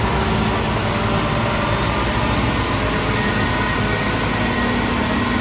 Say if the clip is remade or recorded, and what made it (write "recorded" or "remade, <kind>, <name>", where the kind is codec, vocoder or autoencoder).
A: recorded